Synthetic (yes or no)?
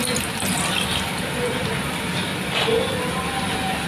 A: no